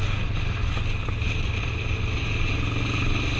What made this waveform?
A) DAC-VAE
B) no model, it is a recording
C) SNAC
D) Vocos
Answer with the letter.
B